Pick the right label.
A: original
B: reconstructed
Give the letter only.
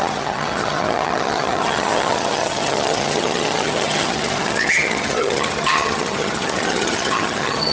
B